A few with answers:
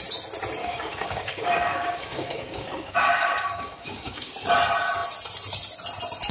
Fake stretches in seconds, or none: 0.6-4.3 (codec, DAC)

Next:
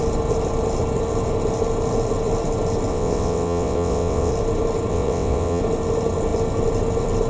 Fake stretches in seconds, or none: 2.9-4.3 (vocoder, WaveNeXt); 4.9-5.6